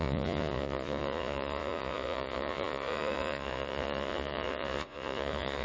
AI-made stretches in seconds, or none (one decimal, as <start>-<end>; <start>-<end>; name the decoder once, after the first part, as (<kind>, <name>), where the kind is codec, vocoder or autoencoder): 0.0-5.6 (vocoder, Vocos)